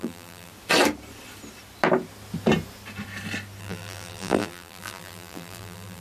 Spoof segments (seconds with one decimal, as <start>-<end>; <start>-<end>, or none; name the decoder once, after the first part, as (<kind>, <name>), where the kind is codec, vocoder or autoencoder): 0.0-0.5 (vocoder, BigVGAN v2); 3.6-6.0